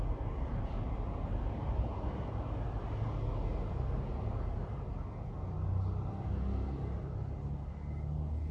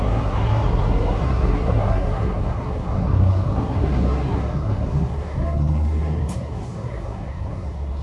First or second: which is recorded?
first